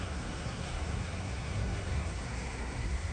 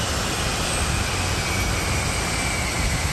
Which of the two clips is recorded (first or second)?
second